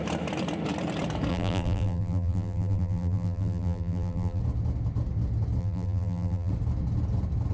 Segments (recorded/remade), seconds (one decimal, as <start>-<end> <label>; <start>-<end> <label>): 0.0-1.3 recorded; 1.3-4.4 remade; 4.4-5.6 recorded; 5.6-6.5 remade; 6.5-7.5 recorded